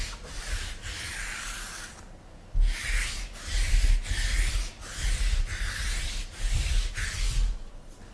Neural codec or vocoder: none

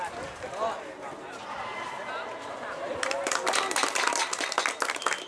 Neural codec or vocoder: none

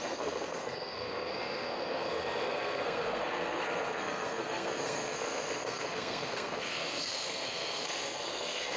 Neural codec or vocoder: codec, SNAC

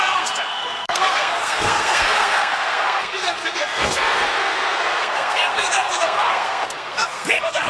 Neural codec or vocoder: codec, SNAC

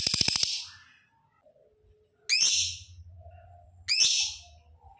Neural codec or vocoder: none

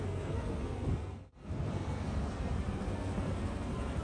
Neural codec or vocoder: codec, SNAC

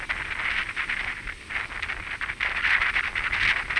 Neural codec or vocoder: none